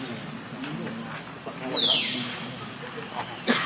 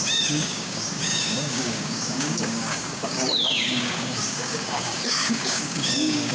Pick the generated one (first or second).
second